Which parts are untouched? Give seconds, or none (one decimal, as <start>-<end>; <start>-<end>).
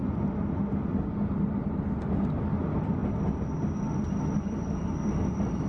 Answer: 0.0-5.7